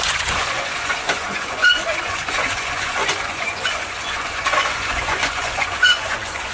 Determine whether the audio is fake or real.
fake